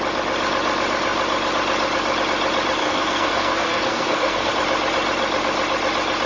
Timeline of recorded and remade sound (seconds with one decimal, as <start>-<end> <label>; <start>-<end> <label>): 0.0-2.8 recorded; 2.8-4.5 remade; 4.5-6.3 recorded